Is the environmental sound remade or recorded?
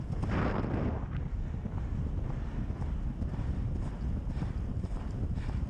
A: recorded